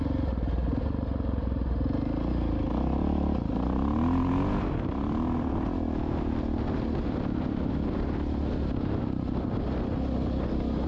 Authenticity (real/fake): real